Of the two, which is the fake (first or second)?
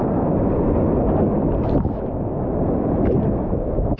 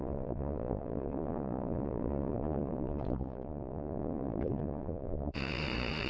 second